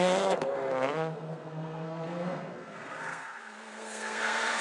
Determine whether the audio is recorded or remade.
remade